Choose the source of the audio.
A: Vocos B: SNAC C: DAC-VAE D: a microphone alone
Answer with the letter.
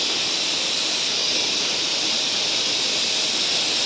D